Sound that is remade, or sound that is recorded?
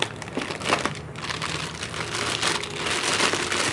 recorded